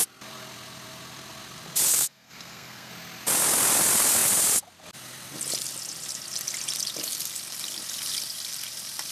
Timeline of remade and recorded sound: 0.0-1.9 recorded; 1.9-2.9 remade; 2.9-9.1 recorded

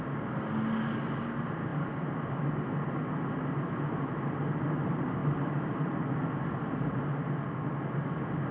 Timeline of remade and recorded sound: 0.0-8.5 recorded

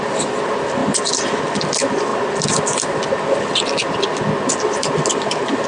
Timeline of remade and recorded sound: 0.0-5.7 recorded

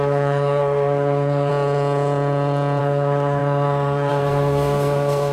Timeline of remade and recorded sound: 0.0-1.5 remade; 1.5-2.8 recorded; 2.8-5.3 remade

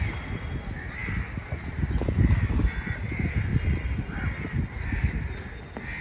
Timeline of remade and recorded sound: 0.0-6.0 recorded

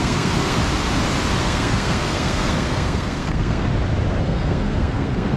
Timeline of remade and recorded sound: 0.0-0.6 remade; 0.6-1.4 recorded; 1.4-3.7 remade; 3.7-4.2 recorded; 4.2-5.4 remade